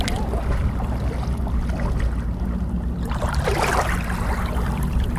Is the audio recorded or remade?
recorded